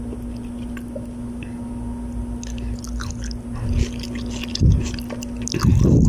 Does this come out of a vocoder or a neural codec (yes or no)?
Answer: no